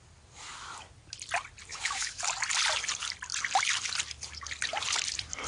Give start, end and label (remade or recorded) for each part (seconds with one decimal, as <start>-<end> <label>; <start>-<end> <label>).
0.0-1.7 recorded; 1.7-2.2 remade; 2.2-5.5 recorded